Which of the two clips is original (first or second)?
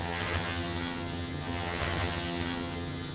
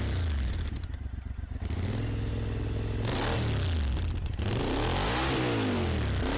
second